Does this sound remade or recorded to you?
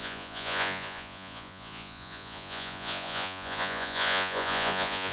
remade